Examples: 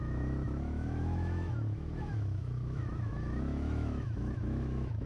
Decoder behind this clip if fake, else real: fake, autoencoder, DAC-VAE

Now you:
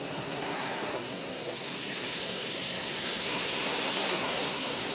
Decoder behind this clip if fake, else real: fake, codec, SNAC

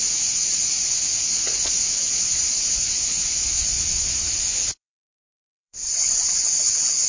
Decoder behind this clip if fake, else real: fake, vocoder, Vocos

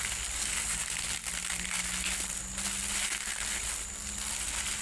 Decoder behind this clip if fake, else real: real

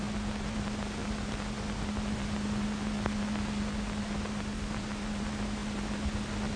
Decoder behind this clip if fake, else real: real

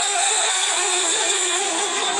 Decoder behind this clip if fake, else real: fake, codec, SNAC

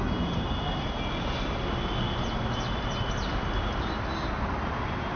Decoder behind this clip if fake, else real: real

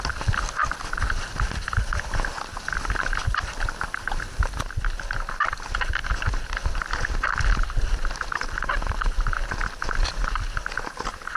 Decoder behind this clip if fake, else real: real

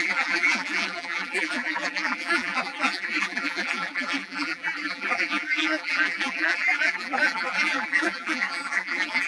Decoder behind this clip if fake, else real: fake, vocoder, BigVGAN v2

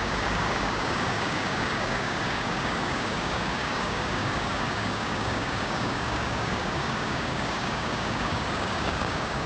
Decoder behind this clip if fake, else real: fake, codec, DAC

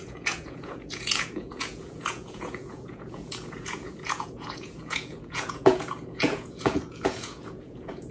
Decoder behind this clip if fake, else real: fake, vocoder, Vocos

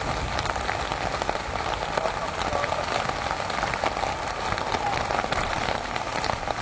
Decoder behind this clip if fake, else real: real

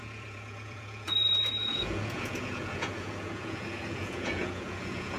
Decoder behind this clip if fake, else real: fake, vocoder, Vocos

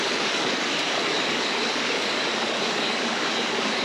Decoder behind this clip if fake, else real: fake, codec, DAC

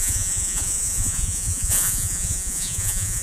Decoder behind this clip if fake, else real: fake, vocoder, Vocos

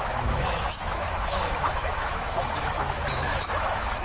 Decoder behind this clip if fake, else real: fake, autoencoder, DAC-VAE